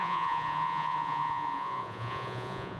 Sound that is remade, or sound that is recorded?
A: remade